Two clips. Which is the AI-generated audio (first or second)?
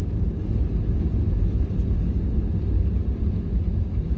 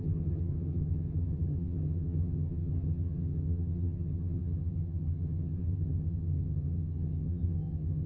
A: second